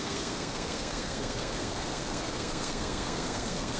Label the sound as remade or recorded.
remade